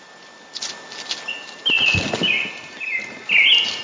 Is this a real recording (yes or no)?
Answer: yes